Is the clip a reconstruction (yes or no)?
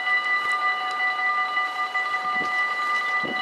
no